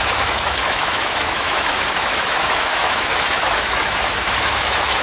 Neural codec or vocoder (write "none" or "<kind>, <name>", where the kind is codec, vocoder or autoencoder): autoencoder, DAC-VAE